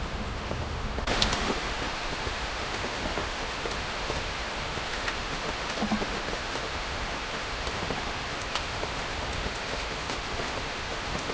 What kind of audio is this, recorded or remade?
remade